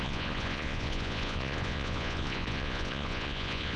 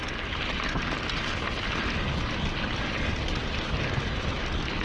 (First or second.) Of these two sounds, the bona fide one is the second